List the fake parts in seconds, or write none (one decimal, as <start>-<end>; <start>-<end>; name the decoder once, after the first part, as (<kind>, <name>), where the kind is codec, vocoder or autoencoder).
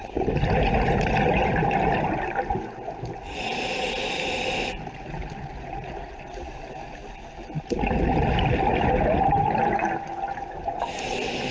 none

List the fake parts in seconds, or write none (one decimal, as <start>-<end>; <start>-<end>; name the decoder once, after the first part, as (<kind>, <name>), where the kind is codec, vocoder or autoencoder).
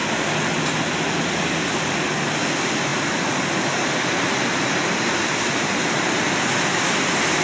none